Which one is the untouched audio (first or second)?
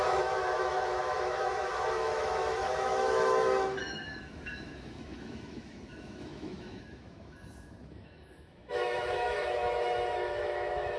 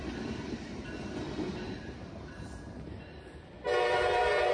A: second